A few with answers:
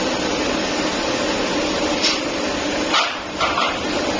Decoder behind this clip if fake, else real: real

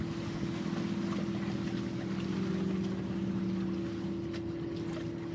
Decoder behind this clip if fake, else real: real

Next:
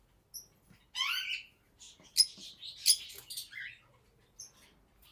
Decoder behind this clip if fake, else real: real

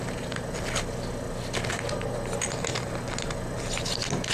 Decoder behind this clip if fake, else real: real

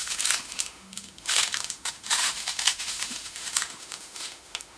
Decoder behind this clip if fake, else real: fake, autoencoder, DAC-VAE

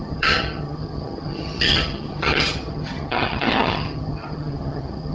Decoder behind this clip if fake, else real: fake, vocoder, HiFi-GAN